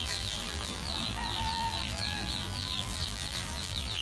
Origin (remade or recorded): remade